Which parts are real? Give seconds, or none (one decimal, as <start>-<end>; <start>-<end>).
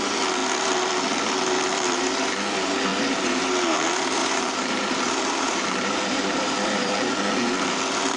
0.0-2.9; 3.5-4.2; 6.9-8.2